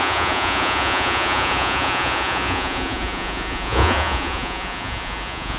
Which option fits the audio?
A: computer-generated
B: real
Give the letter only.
A